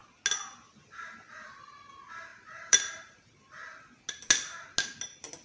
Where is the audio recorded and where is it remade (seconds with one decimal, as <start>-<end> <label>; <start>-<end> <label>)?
0.0-2.3 recorded; 2.3-3.3 remade; 3.3-5.4 recorded